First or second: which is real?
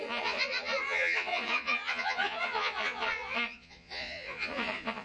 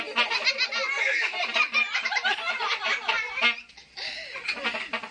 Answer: second